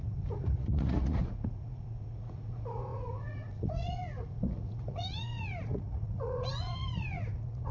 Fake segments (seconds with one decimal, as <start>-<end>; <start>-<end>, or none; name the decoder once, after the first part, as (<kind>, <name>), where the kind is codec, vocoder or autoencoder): 0.0-7.7 (vocoder, Vocos)